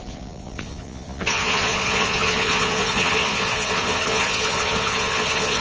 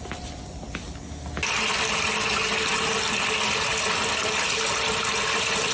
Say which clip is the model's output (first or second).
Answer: first